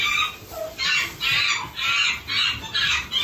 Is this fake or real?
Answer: real